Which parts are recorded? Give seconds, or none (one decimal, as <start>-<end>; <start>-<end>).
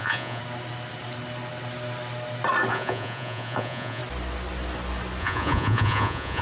0.4-2.7; 4.0-5.2